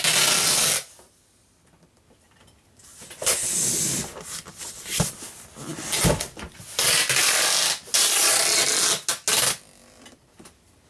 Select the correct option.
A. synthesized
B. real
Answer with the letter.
B